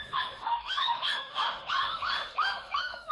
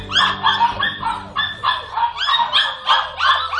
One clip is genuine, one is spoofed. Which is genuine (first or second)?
second